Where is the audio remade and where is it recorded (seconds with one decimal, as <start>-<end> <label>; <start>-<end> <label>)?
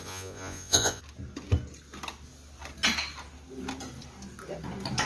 0.0-1.0 remade; 1.0-5.1 recorded